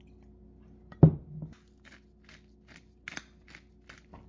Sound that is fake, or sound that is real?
real